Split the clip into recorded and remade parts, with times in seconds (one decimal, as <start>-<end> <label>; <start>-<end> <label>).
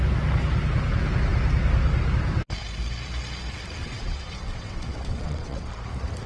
0.0-3.8 recorded; 3.8-5.7 remade; 5.7-6.3 recorded